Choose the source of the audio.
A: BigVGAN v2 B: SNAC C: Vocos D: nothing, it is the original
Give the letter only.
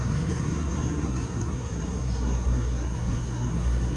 B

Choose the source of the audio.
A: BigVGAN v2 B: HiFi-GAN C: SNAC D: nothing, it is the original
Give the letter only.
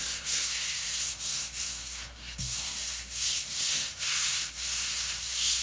C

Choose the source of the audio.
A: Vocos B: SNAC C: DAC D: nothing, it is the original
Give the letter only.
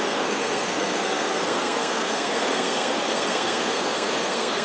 B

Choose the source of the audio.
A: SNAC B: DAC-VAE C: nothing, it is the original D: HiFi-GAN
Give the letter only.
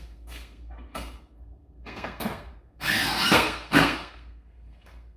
A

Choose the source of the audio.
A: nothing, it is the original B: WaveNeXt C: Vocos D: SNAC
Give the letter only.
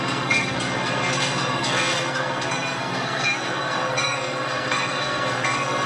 D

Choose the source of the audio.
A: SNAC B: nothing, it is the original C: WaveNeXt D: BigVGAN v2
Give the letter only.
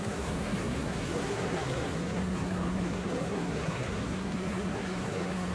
A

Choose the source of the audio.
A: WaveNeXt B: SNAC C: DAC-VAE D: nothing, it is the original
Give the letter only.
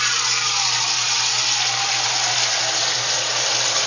D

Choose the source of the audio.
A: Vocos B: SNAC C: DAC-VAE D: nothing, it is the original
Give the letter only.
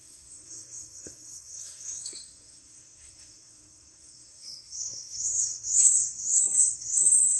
B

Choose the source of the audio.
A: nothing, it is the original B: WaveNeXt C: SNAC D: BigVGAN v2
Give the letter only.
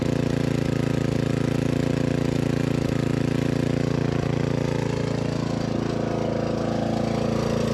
A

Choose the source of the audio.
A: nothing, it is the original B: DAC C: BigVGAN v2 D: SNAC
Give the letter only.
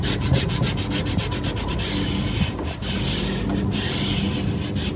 A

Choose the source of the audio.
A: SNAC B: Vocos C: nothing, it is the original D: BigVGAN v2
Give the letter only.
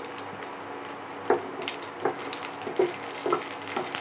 C